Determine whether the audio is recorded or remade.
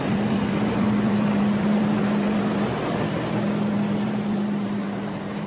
remade